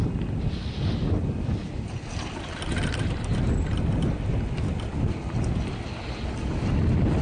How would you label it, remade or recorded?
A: recorded